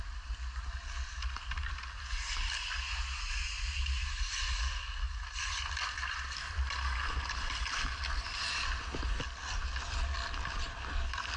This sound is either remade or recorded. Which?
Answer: recorded